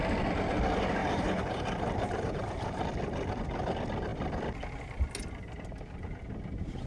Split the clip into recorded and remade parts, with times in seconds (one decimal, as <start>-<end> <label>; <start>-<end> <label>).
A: 0.0-1.0 recorded; 1.0-2.8 remade; 2.8-6.9 recorded

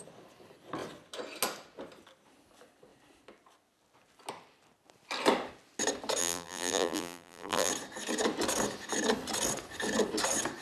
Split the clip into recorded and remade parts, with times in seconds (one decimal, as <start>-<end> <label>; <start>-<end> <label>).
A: 0.0-6.2 recorded; 6.2-7.7 remade; 7.7-10.6 recorded

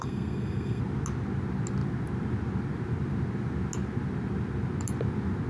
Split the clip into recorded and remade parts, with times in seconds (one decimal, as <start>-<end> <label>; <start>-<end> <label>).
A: 0.0-0.8 remade; 0.8-5.5 recorded